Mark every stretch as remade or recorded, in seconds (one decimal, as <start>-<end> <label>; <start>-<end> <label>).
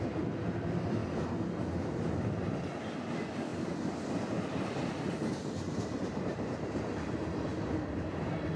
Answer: 0.0-1.0 remade; 1.0-2.1 recorded; 2.1-8.6 remade